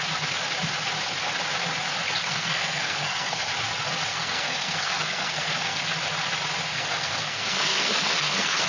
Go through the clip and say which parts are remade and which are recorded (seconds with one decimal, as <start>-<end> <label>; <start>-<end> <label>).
0.0-2.2 recorded; 2.2-3.5 remade; 3.5-4.1 recorded; 4.1-5.8 remade; 5.8-6.7 recorded; 6.7-8.7 remade